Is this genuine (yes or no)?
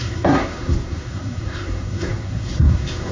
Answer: no